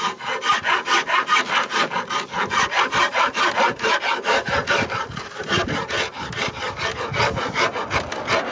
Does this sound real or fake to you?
real